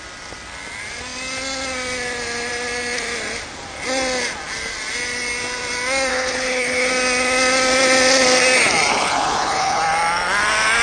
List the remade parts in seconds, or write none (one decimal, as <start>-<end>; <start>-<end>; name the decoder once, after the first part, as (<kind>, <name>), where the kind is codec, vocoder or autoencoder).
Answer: 6.1-6.9 (codec, HILCodec); 8.9-9.8